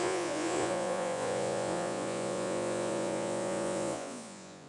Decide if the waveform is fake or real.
fake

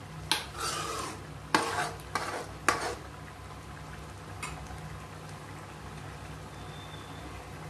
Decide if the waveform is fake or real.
real